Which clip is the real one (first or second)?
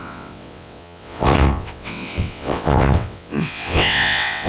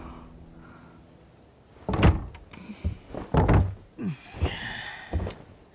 second